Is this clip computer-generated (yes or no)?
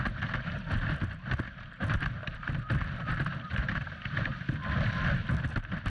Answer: yes